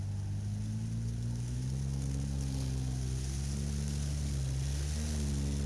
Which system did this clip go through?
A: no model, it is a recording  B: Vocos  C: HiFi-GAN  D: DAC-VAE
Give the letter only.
A